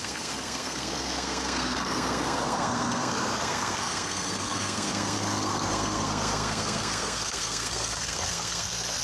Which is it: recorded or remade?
remade